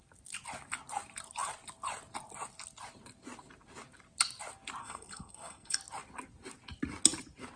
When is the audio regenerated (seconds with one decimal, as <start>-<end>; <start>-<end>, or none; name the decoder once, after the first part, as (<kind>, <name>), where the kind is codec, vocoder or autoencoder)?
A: 4.8-5.8 (codec, SNAC)